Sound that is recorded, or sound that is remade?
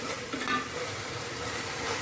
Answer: remade